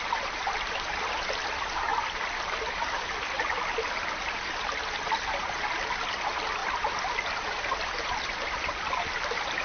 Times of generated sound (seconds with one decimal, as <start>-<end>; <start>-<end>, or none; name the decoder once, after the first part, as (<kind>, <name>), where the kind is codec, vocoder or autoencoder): none